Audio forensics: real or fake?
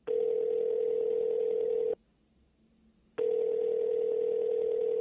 real